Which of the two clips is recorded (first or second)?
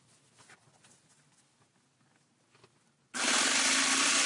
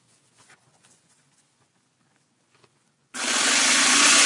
first